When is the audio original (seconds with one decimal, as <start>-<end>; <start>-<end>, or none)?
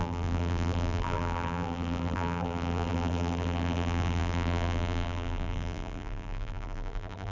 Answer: none